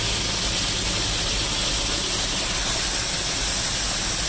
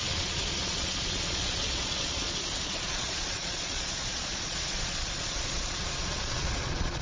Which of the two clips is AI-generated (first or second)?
second